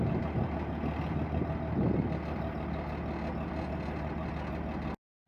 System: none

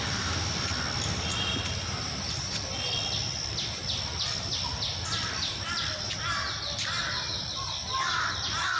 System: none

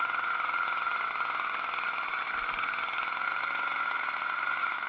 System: none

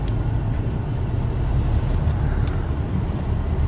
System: none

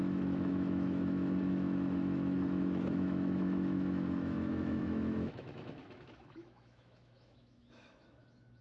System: autoencoder, DAC-VAE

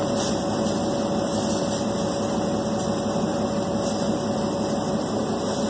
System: none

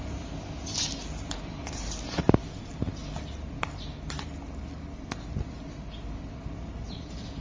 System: none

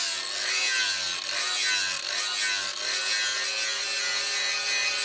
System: none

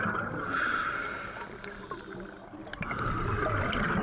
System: none